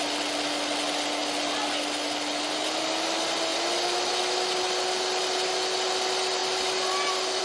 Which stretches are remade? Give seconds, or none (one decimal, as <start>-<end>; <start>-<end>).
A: none